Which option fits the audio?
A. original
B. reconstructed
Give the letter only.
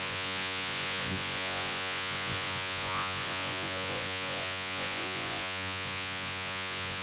B